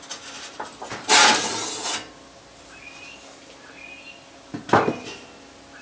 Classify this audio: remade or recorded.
recorded